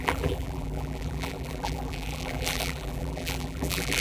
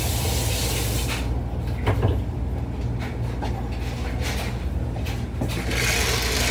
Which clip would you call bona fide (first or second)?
second